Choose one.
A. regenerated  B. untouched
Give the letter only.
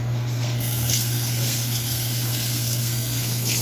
A